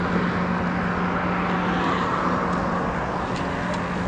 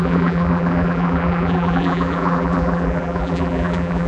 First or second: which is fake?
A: second